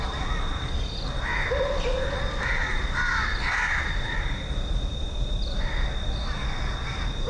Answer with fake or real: real